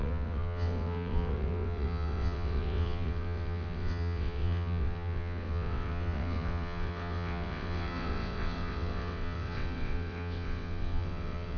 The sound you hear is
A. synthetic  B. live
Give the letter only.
A